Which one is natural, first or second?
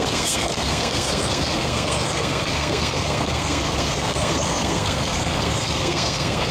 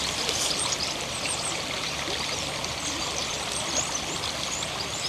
second